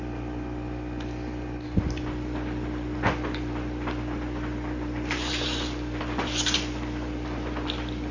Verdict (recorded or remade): recorded